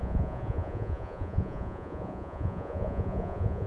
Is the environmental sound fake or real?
fake